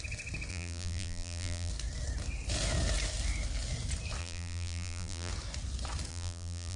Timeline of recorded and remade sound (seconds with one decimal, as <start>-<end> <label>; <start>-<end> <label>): 0.0-0.5 recorded; 0.5-1.7 remade; 1.7-4.2 recorded; 4.2-5.3 remade; 5.3-6.1 recorded; 6.1-6.8 remade